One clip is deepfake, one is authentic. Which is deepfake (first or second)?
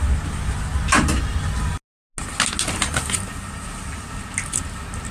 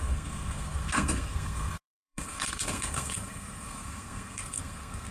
second